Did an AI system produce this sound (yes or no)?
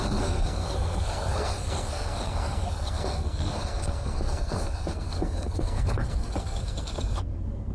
yes